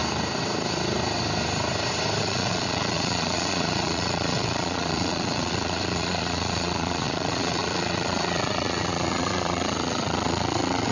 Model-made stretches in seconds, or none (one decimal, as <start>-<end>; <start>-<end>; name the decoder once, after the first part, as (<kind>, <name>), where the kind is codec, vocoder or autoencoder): 2.2-10.9 (vocoder, Vocos)